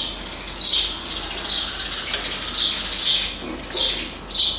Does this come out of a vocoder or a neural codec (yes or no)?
no